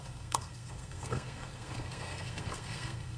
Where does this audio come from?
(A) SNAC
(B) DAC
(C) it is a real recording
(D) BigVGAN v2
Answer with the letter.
A